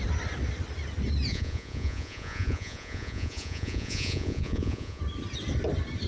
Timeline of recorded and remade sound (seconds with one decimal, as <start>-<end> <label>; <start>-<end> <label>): 0.0-1.3 recorded; 1.3-5.0 remade; 5.0-6.1 recorded